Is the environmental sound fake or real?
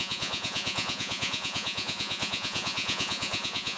fake